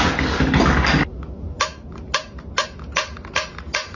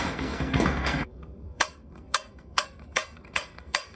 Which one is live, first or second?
first